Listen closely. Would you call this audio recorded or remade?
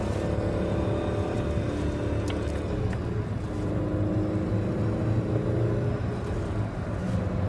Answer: recorded